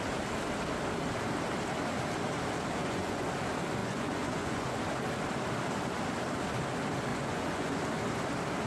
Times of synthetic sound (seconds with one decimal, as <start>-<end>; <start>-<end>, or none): 2.8-3.3; 3.8-4.8; 7.1-7.8